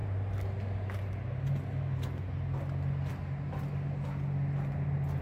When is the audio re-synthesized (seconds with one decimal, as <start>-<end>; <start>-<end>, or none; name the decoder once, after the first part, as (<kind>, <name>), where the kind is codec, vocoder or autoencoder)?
none